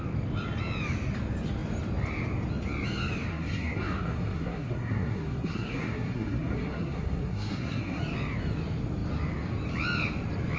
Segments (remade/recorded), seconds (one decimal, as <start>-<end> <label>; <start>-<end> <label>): 0.0-3.3 recorded; 3.3-8.0 remade; 8.0-10.6 recorded